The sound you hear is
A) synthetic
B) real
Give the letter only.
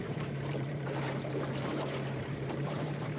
A